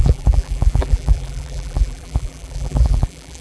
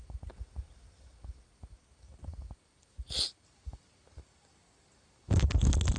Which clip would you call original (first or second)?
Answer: second